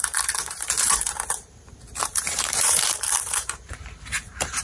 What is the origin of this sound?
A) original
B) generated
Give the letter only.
B